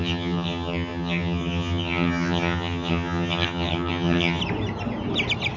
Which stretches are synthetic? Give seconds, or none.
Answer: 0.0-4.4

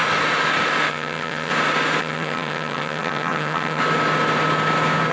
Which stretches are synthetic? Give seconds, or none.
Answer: 0.9-1.5; 2.0-3.8

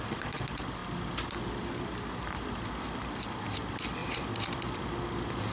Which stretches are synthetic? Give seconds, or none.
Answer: none

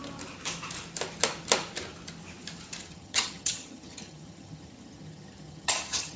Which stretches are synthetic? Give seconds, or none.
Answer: 2.8-6.2

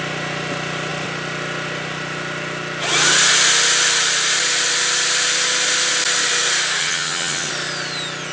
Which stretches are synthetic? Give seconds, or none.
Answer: 6.8-7.5

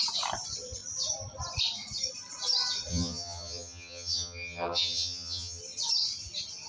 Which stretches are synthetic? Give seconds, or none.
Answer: 2.9-5.6

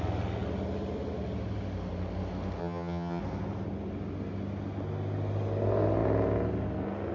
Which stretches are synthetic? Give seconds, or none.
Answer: 2.6-3.2

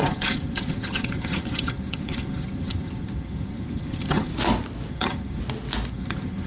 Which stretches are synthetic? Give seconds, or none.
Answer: 0.0-4.3; 4.9-5.4; 5.9-6.5